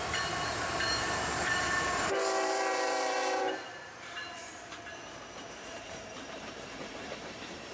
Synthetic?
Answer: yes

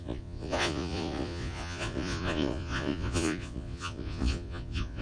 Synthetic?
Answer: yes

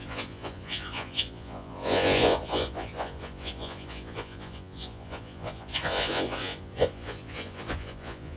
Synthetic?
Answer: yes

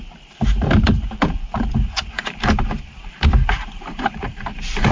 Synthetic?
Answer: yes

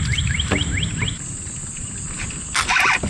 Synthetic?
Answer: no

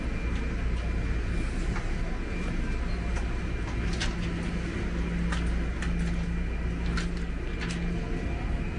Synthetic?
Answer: no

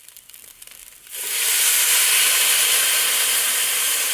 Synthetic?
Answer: no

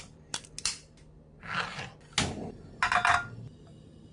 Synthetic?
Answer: no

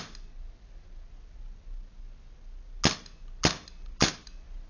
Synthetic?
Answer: no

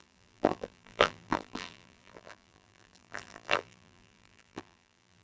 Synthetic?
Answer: yes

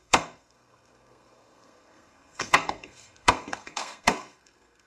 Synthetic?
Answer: yes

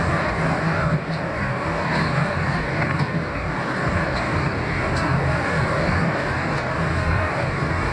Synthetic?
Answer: yes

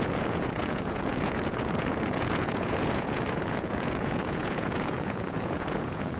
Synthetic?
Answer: yes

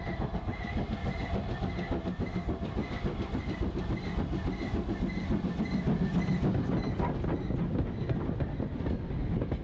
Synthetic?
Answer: no